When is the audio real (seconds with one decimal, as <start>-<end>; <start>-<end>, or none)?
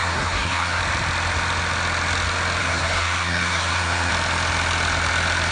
0.8-2.6; 4.1-5.5